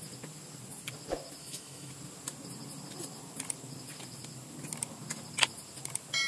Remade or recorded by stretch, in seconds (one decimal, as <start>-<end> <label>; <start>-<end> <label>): 0.0-1.4 recorded; 1.4-1.9 remade; 1.9-6.3 recorded